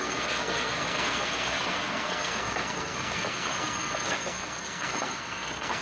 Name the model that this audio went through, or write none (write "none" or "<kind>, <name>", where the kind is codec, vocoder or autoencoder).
codec, SNAC